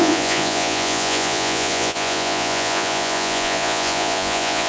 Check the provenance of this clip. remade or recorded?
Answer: remade